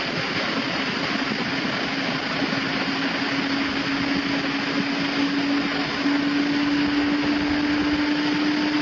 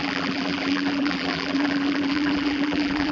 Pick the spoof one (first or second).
second